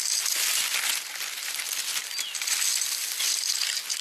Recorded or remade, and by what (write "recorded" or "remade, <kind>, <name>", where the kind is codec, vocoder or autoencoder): recorded